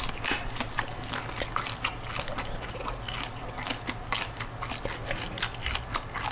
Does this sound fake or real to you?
real